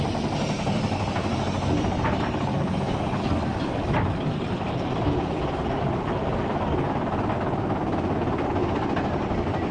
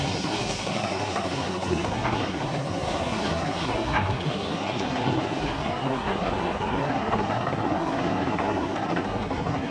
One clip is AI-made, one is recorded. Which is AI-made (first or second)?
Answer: second